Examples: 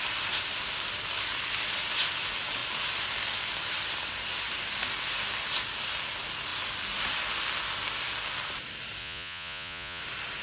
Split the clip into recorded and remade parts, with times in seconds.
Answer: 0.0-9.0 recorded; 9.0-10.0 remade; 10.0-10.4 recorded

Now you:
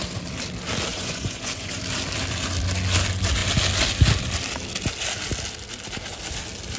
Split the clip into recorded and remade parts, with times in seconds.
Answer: 0.0-0.9 recorded; 0.9-1.8 remade; 1.8-6.8 recorded

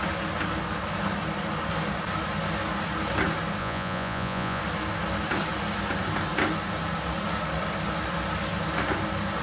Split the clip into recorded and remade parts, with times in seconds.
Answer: 0.0-3.6 recorded; 3.6-4.6 remade; 4.6-9.4 recorded